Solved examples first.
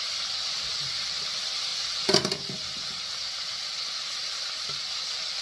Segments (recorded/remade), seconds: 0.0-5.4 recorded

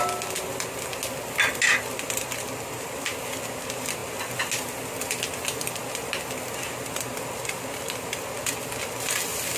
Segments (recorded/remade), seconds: 0.0-9.6 recorded